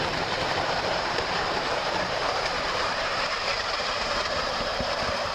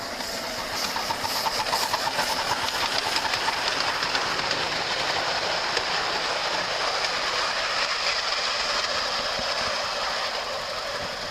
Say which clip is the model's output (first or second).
first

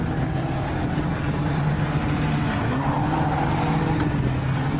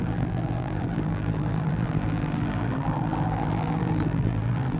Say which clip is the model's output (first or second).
second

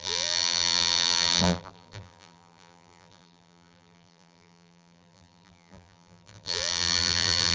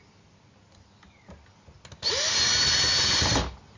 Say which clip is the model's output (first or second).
first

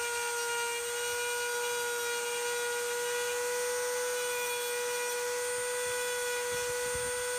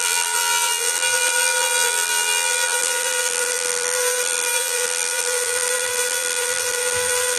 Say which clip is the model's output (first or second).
second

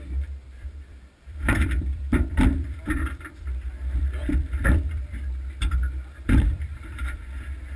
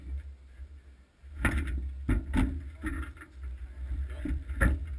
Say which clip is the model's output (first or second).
first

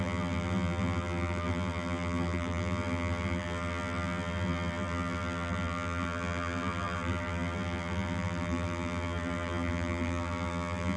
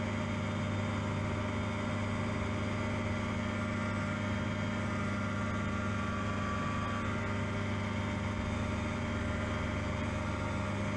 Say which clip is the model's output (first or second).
first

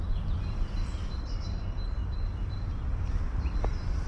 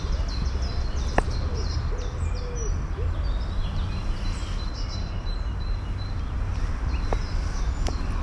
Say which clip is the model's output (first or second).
first